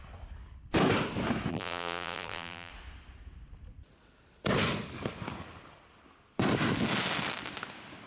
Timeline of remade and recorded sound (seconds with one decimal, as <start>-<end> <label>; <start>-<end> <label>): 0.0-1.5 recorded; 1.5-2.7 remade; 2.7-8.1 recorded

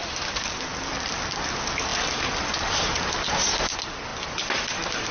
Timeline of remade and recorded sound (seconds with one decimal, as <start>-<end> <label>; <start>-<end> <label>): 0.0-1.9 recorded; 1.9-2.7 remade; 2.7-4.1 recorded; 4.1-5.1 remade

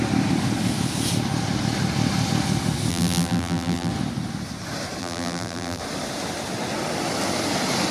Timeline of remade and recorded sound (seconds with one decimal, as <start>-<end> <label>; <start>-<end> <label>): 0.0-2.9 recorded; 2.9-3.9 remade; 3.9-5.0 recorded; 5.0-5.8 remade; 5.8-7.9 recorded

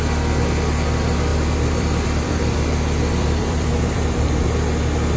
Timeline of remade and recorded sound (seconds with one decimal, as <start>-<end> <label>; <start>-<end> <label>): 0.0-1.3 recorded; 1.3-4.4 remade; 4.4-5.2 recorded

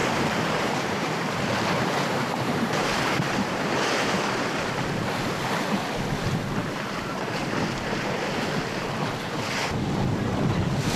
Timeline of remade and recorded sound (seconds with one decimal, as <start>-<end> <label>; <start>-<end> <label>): 0.0-4.7 remade; 4.7-11.0 recorded

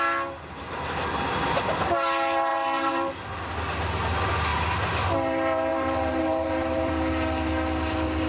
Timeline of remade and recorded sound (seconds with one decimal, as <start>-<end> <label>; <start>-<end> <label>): 0.0-2.5 recorded; 2.5-3.1 remade; 3.1-5.7 recorded; 5.7-6.9 remade; 6.9-8.3 recorded